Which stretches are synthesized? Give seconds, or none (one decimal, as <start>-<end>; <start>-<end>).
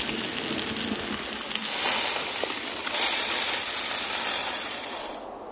2.8-3.3; 4.4-5.0